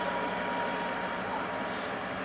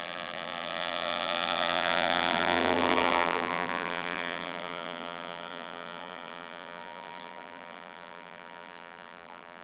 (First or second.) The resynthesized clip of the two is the second